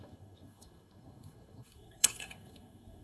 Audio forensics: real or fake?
fake